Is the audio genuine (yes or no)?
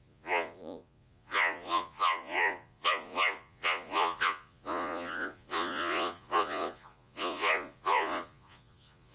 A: no